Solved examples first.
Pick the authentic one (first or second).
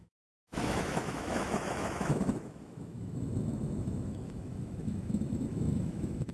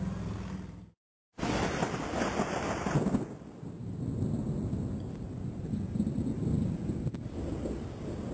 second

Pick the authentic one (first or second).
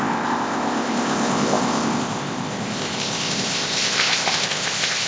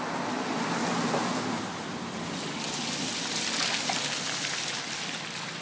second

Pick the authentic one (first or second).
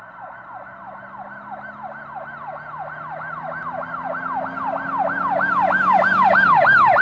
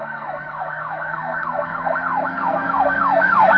first